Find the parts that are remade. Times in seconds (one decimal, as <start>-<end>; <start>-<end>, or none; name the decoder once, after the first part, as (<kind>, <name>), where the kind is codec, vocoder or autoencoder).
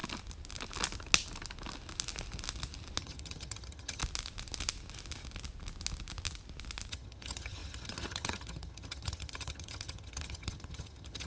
3.0-4.0 (vocoder, HiFi-GAN); 6.9-11.3